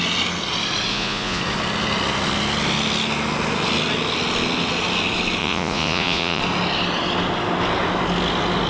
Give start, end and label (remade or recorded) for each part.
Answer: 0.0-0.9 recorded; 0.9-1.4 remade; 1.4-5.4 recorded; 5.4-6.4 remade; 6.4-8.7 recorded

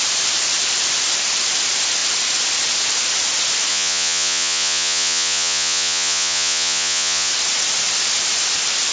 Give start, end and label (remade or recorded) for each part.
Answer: 0.0-3.7 recorded; 3.7-7.3 remade; 7.3-8.9 recorded

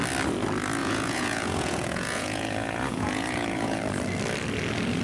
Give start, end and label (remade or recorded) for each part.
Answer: 0.0-0.8 recorded; 0.8-3.8 remade; 3.8-5.0 recorded

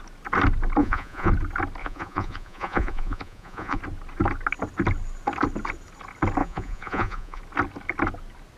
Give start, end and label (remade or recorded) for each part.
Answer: 0.0-0.8 recorded; 0.8-1.3 remade; 1.3-1.8 recorded; 1.8-3.8 remade; 3.8-6.4 recorded; 6.4-7.4 remade; 7.4-8.6 recorded

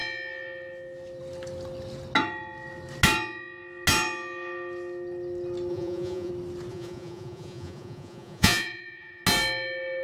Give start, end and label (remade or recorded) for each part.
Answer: 0.0-5.7 recorded; 5.7-6.3 remade; 6.3-6.7 recorded; 6.7-9.2 remade; 9.2-10.0 recorded

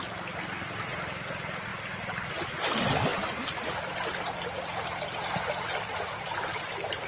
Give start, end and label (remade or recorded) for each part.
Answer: 0.0-7.1 recorded

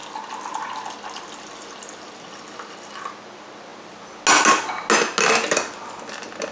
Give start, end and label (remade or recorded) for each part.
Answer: 0.0-6.5 recorded